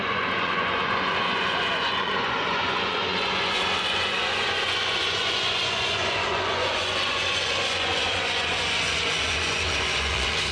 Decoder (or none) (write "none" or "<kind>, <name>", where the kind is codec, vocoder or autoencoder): vocoder, Vocos